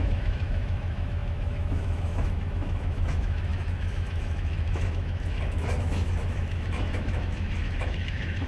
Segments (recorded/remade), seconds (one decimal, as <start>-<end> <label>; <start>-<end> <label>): 0.0-8.5 remade